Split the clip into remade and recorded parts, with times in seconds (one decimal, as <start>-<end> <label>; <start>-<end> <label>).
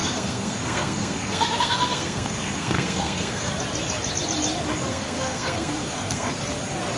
0.0-3.5 remade; 3.5-4.9 recorded; 4.9-6.3 remade; 6.3-7.0 recorded